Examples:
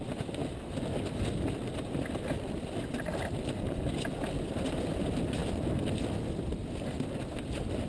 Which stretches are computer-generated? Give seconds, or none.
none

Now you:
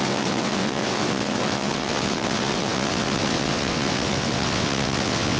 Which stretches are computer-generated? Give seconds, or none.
0.0-5.4 (vocoder, WaveNeXt)